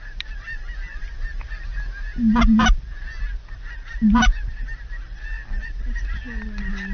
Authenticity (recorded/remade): recorded